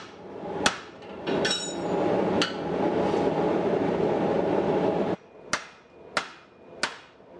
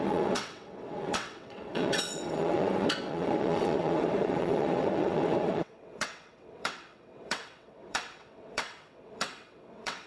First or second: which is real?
first